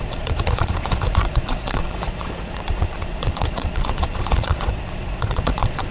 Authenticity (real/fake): fake